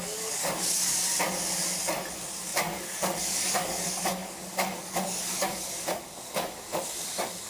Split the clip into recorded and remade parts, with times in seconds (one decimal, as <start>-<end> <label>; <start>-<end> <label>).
0.0-1.0 remade; 1.0-2.1 recorded; 2.1-7.5 remade